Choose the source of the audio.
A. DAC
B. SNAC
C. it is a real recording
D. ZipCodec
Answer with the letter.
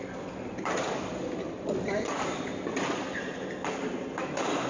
C